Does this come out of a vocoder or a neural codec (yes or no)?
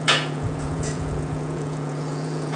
yes